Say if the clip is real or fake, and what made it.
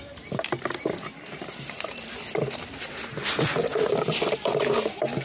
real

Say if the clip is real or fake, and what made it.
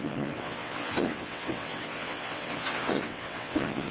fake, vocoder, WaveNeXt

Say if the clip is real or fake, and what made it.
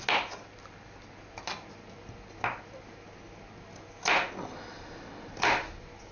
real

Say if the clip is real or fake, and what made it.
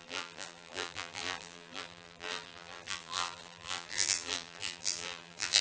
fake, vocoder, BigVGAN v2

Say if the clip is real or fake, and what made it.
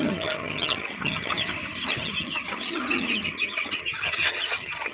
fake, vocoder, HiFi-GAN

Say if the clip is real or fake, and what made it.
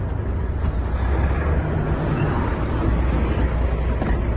real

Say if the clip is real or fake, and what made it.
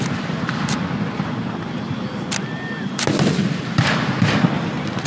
real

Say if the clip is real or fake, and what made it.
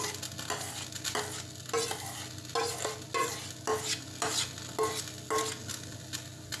real